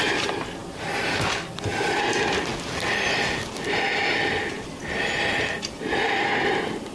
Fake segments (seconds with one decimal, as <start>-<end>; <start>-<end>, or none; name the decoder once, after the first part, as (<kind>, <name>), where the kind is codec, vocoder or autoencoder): none